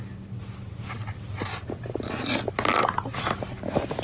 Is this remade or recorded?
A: recorded